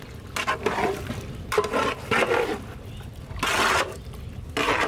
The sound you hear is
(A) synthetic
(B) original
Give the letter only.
B